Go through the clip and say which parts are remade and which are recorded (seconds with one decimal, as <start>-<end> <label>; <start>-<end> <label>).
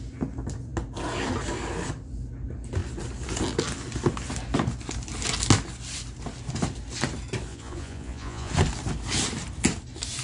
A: 0.0-7.5 recorded; 7.5-8.5 remade; 8.5-10.2 recorded